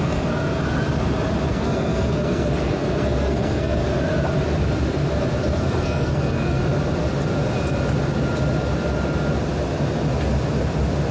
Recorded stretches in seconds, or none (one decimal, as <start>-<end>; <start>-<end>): 0.6-1.5; 3.8-5.6; 6.6-11.1